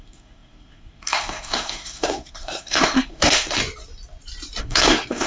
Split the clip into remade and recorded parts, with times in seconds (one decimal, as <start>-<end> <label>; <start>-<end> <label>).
0.0-3.6 remade; 3.6-4.6 recorded; 4.6-5.3 remade